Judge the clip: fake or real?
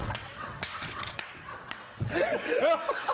fake